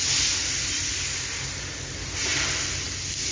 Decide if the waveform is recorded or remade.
recorded